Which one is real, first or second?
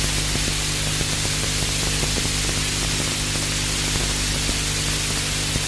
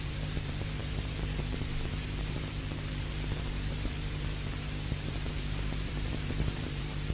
first